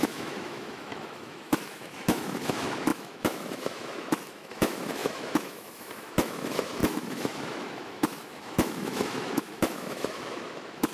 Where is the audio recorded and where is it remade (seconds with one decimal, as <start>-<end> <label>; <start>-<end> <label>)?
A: 0.0-10.9 remade